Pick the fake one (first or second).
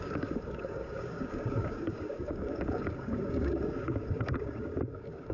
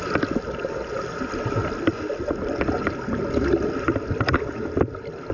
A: first